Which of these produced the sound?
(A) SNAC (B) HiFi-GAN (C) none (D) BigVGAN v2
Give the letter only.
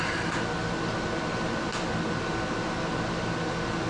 C